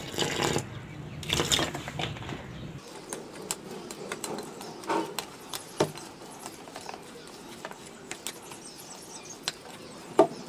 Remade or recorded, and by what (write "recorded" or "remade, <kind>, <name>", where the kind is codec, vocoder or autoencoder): recorded